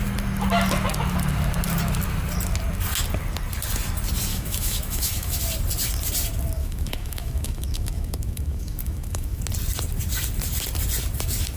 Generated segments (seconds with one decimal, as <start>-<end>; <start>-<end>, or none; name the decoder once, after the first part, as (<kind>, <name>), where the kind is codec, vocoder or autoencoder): 4.3-5.4 (autoencoder, DAC-VAE); 6.6-9.4